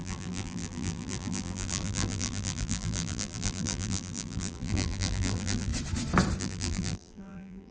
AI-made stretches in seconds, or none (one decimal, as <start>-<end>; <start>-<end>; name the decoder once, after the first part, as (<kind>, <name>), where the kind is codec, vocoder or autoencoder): 0.0-5.7 (vocoder, BigVGAN v2); 6.4-7.7